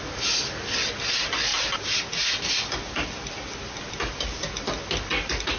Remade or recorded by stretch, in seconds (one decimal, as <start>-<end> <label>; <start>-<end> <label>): 0.0-5.6 recorded